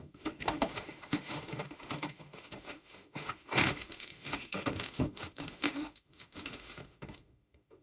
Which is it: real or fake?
fake